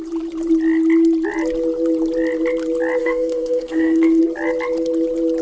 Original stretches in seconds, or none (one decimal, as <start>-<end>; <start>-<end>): 0.0-3.0; 4.2-5.4